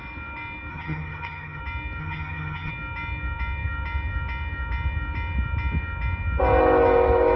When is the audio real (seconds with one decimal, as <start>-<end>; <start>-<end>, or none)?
0.0-0.7; 1.6-2.0; 2.7-7.4